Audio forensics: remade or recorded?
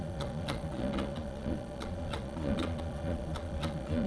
remade